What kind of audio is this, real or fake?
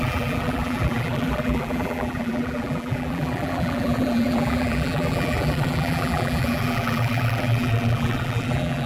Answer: fake